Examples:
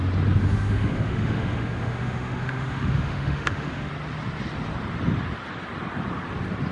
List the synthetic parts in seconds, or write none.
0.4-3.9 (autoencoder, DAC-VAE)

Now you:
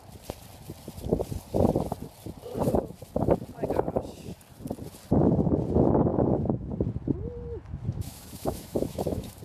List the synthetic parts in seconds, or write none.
6.1-6.7 (autoencoder, DAC-VAE); 7.9-9.4

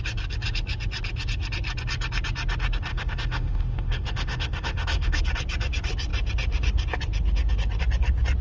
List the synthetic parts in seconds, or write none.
2.9-5.2 (autoencoder, DAC-VAE)

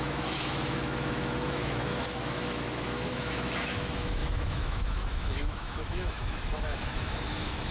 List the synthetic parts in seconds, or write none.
0.0-7.7 (autoencoder, DAC-VAE)